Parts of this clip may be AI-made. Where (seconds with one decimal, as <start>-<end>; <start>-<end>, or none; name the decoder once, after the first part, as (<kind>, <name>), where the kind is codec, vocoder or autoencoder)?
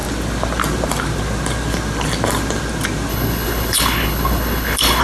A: 3.1-5.0 (codec, HILCodec)